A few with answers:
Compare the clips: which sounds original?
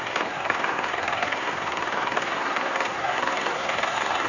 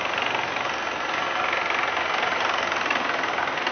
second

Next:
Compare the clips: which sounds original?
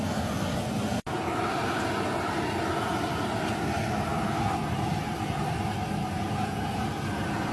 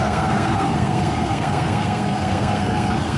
first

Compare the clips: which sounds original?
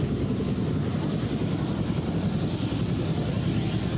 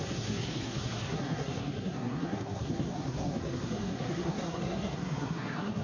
first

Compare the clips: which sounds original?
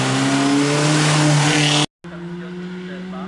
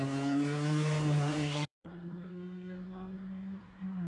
first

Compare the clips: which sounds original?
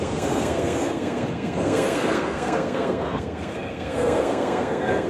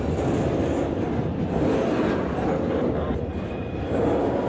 second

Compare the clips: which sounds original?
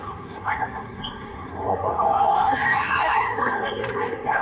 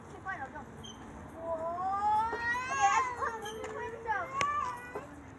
second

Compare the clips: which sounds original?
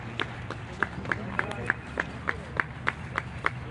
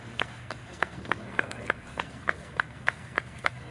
first